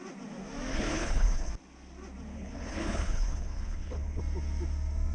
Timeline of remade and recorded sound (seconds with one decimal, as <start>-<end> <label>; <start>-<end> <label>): 0.0-0.7 recorded; 0.7-1.5 remade; 1.5-2.3 recorded; 2.3-4.2 remade; 4.2-5.1 recorded